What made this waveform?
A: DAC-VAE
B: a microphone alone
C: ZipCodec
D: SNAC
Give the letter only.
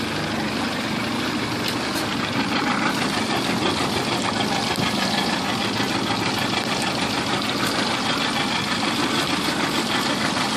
B